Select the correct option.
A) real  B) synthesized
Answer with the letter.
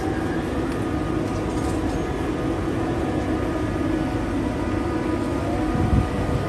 A